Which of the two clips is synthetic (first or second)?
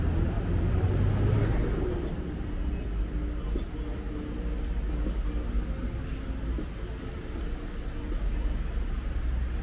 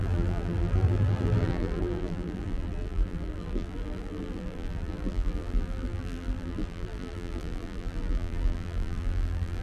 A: second